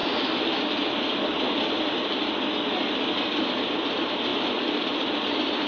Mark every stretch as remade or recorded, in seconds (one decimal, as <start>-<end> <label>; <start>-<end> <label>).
0.0-5.7 recorded